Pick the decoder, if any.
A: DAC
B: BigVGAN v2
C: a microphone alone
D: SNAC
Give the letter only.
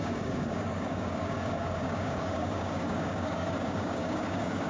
A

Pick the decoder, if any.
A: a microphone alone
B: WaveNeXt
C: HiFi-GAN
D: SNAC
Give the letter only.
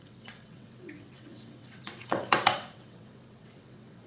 B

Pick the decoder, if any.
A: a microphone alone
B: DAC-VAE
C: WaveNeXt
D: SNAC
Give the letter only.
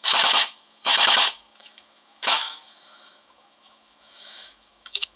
B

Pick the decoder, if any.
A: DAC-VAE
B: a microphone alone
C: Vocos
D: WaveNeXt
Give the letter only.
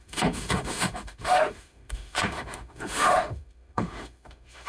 A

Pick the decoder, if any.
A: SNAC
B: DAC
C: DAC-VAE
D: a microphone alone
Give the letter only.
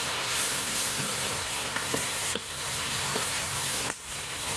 A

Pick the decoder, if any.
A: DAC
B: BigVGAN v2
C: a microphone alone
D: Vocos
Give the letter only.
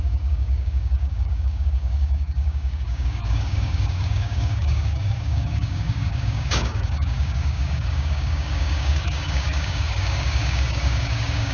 A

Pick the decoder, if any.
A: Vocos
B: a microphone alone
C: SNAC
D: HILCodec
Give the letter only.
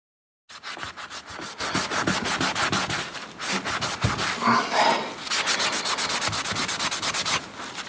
B